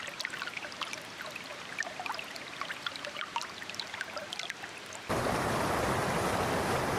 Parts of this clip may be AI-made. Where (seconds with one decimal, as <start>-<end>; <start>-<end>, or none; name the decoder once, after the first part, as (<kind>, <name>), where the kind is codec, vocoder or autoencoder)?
1.5-5.7 (vocoder, BigVGAN v2)